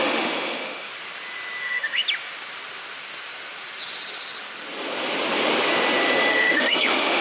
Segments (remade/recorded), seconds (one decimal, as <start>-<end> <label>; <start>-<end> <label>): 0.0-0.9 remade; 0.9-1.6 recorded; 1.6-2.0 remade; 2.0-6.3 recorded; 6.3-7.2 remade